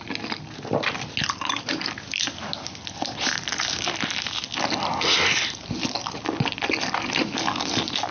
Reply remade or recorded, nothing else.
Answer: recorded